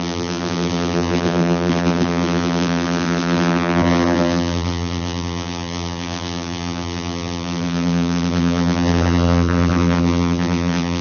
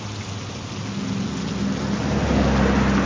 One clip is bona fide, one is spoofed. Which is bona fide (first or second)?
second